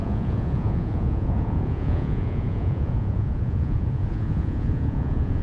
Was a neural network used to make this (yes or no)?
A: yes